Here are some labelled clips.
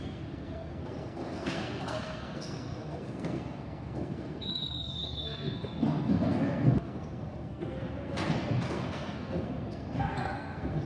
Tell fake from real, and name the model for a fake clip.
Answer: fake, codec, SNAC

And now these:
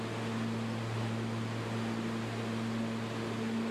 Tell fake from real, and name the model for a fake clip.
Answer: real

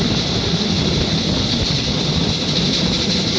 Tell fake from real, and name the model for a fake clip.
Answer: real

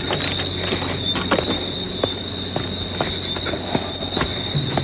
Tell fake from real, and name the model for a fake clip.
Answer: real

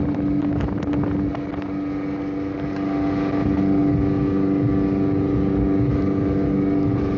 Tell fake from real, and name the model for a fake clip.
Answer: real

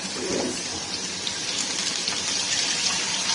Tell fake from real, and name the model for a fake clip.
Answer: real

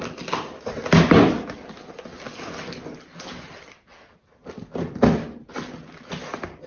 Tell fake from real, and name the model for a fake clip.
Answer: real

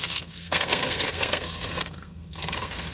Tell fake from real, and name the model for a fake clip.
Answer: fake, codec, SNAC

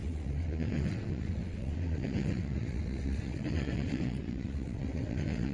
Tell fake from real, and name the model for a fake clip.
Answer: fake, vocoder, WaveNeXt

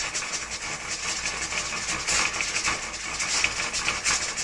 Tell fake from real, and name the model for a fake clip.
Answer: real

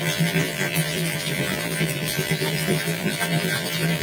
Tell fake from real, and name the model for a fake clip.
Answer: fake, vocoder, BigVGAN v2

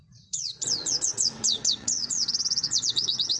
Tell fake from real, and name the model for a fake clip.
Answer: fake, vocoder, WaveNeXt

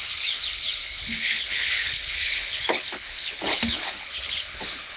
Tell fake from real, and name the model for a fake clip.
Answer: fake, codec, HILCodec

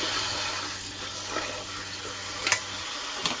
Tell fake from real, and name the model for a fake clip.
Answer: real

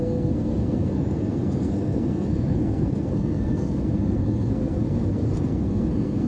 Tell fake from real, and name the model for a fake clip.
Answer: fake, codec, SNAC